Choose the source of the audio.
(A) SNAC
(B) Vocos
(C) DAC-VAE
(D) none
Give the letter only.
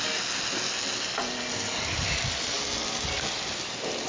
D